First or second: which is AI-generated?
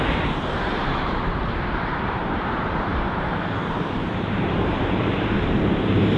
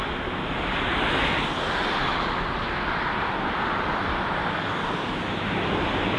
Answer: first